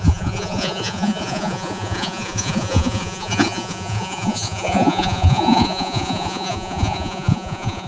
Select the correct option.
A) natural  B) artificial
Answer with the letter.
B